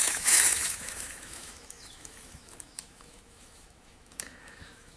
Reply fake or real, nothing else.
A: fake